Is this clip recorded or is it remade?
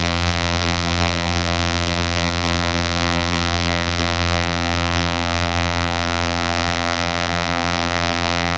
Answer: remade